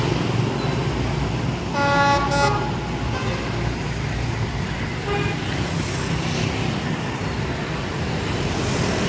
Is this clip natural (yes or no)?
yes